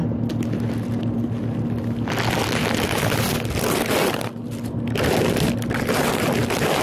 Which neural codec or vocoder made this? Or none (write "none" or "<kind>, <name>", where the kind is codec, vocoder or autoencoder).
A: none